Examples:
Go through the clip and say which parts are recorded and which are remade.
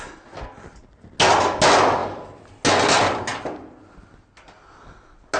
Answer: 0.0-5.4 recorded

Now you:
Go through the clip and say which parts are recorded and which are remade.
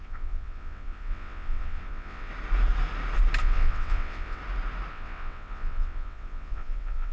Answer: 0.0-2.3 remade; 2.3-3.4 recorded; 3.4-4.4 remade; 4.4-4.9 recorded; 4.9-7.1 remade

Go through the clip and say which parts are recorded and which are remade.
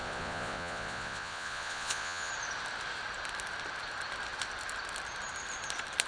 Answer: 0.0-2.3 remade; 2.3-6.1 recorded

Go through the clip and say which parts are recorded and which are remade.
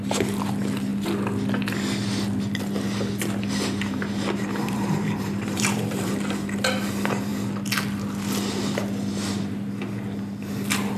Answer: 0.0-4.6 recorded; 4.6-6.1 remade; 6.1-11.0 recorded